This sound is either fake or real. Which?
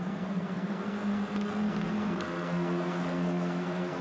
fake